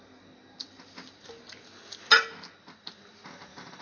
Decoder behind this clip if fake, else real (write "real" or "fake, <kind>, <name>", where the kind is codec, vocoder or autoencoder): real